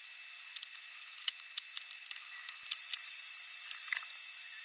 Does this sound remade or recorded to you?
recorded